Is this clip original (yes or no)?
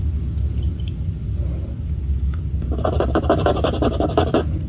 yes